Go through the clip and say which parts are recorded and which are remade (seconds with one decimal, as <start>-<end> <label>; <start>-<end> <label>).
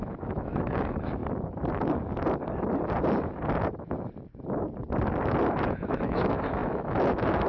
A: 0.0-1.2 remade; 1.2-5.7 recorded; 5.7-7.5 remade